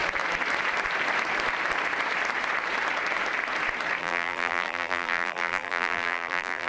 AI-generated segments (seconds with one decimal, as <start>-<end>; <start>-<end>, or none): 4.0-6.7